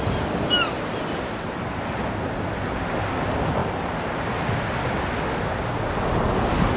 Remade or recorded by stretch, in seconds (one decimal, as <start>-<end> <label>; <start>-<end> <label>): 0.0-6.8 recorded